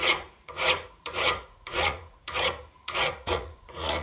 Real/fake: fake